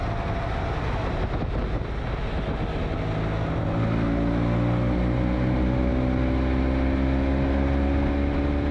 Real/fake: real